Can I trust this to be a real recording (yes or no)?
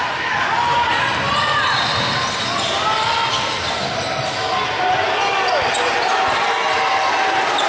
yes